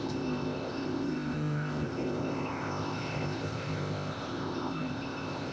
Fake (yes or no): yes